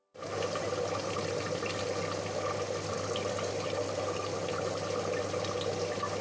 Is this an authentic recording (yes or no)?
yes